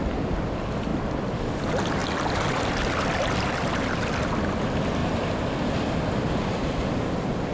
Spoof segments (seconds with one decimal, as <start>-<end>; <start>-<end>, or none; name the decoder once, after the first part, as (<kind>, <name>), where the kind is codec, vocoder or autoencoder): 2.0-3.1 (vocoder, BigVGAN v2); 5.0-5.7